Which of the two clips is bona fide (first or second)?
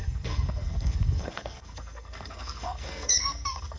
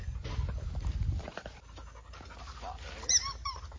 second